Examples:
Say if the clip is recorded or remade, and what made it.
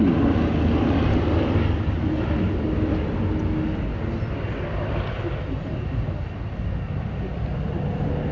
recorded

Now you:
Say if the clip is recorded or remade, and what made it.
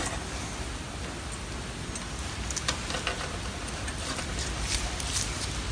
recorded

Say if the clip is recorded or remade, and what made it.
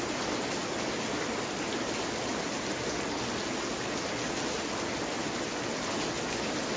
recorded